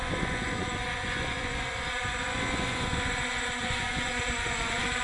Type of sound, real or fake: fake